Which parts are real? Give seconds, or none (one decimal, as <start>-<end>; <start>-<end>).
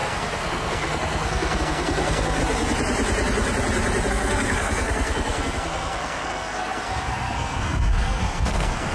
2.4-4.1